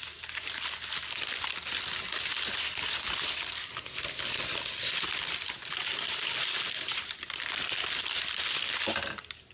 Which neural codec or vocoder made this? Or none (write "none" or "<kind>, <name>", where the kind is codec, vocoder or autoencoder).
none